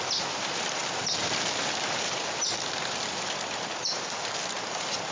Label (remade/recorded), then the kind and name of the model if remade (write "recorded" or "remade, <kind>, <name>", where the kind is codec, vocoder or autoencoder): recorded